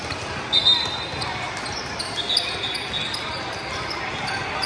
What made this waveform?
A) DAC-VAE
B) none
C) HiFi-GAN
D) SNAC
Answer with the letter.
B